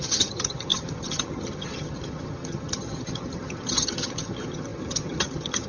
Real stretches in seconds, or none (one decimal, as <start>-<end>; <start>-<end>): none